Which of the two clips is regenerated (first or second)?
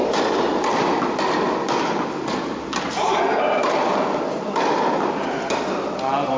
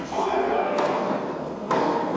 second